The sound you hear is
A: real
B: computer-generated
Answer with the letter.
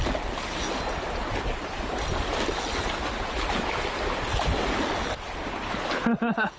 A